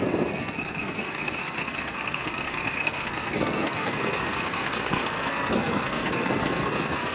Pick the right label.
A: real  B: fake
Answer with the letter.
B